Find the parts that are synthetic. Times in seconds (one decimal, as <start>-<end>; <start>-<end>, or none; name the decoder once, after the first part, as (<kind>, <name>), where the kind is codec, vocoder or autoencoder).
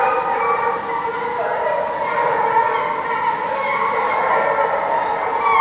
3.7-4.4 (vocoder, BigVGAN v2)